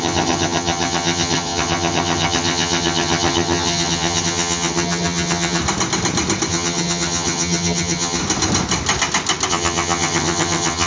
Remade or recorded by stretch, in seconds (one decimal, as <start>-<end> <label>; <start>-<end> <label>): 0.0-5.6 remade; 5.6-6.5 recorded; 6.5-8.2 remade; 8.2-9.5 recorded; 9.5-10.9 remade

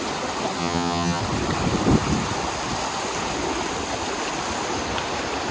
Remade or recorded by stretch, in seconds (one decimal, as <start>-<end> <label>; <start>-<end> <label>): 0.0-0.6 recorded; 0.6-1.2 remade; 1.2-5.5 recorded

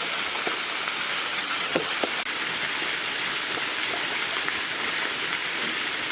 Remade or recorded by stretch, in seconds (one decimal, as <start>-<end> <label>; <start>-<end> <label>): 0.0-1.3 recorded; 1.3-1.9 remade; 1.9-6.1 recorded

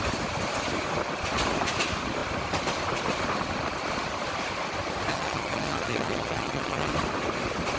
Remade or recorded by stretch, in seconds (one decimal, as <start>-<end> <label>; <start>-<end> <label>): 0.0-5.1 recorded; 5.1-6.9 remade; 6.9-7.8 recorded

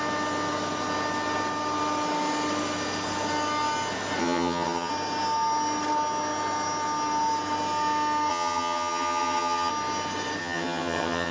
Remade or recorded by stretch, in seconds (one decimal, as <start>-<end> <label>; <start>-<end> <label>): 0.0-4.2 recorded; 4.2-4.9 remade; 4.9-8.3 recorded; 8.3-9.7 remade; 9.7-10.4 recorded; 10.4-11.3 remade

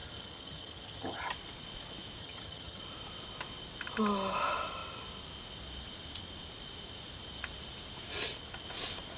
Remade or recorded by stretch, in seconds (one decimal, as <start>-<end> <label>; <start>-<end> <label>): 0.0-1.3 remade; 1.3-2.2 recorded; 2.2-2.8 remade; 2.8-9.2 recorded

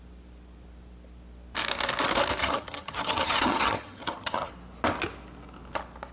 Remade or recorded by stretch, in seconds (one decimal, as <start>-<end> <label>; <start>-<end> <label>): 0.0-2.4 recorded; 2.4-4.5 remade; 4.5-6.1 recorded

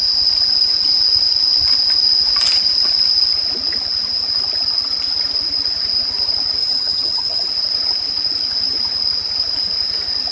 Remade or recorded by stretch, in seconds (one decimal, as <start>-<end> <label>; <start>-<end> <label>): 0.0-6.6 recorded; 6.6-7.5 remade; 7.5-10.3 recorded